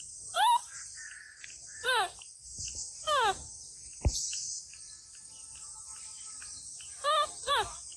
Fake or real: real